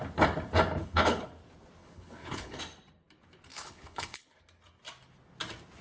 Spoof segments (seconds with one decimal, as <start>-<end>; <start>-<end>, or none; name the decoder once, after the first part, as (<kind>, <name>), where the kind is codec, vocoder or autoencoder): 0.8-1.3 (codec, HILCodec); 1.8-2.6; 3.5-4.4